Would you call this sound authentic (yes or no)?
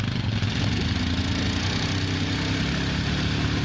yes